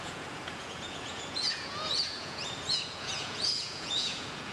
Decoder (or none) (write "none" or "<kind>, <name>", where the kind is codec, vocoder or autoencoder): vocoder, Vocos